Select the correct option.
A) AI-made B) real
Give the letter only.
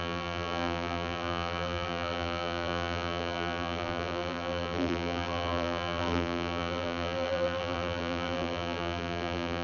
A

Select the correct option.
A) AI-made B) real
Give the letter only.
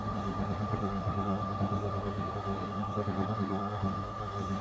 A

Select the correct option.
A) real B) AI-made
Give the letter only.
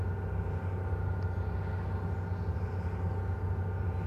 A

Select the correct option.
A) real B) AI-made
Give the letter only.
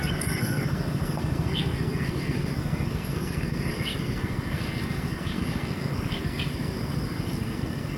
B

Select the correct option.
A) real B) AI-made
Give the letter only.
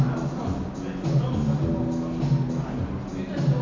A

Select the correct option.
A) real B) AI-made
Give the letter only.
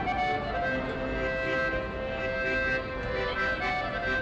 A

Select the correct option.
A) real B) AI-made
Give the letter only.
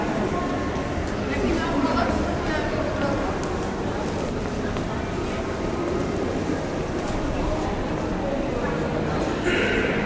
A